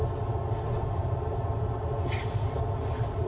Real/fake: real